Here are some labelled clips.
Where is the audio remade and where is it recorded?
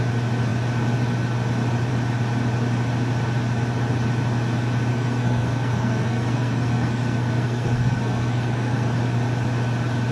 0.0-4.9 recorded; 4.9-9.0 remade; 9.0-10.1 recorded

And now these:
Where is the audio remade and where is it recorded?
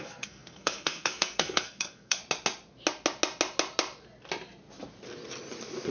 0.0-2.2 remade; 2.2-5.9 recorded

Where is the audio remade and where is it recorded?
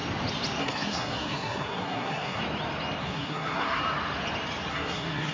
0.0-0.6 recorded; 0.6-2.4 remade; 2.4-3.0 recorded; 3.0-3.8 remade; 3.8-4.7 recorded; 4.7-5.3 remade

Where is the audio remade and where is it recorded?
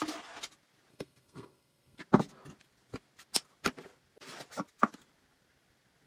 0.0-0.9 recorded; 0.9-2.0 remade; 2.0-6.1 recorded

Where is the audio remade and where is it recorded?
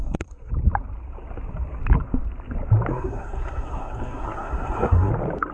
0.0-0.5 remade; 0.5-2.9 recorded; 2.9-5.1 remade; 5.1-5.5 recorded